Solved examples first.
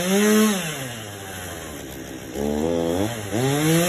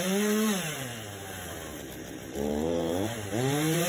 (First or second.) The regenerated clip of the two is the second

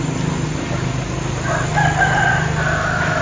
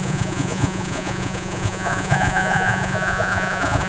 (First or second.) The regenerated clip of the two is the second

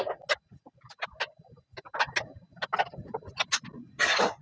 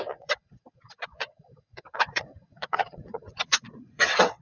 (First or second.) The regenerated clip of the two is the second